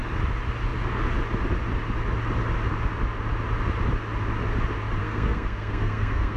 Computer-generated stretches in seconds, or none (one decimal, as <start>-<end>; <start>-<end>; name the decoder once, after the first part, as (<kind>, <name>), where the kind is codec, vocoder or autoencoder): 5.0-6.4 (codec, SNAC)